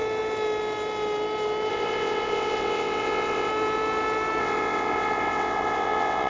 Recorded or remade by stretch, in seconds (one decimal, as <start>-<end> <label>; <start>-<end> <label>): 0.0-1.7 recorded; 1.7-3.5 remade; 3.5-4.4 recorded; 4.4-6.3 remade